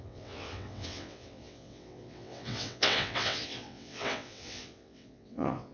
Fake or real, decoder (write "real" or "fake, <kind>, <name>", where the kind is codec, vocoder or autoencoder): fake, vocoder, WaveNeXt